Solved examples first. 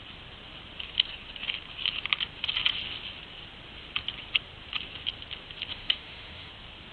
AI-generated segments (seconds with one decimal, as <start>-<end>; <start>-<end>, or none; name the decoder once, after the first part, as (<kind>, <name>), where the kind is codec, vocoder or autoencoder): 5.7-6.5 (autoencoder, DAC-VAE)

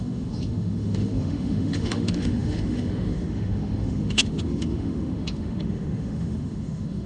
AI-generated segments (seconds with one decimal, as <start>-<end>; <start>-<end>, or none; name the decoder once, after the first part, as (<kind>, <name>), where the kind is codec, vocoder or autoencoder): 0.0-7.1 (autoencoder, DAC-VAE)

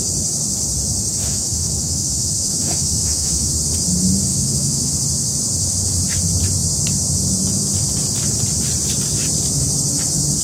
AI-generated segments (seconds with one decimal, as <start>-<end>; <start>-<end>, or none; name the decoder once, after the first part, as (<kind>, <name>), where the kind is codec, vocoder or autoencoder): 1.2-3.5 (autoencoder, DAC-VAE); 4.3-4.9

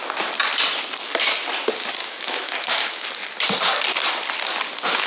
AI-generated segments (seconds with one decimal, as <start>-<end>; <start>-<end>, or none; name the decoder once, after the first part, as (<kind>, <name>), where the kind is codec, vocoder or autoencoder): 2.0-3.1 (autoencoder, DAC-VAE)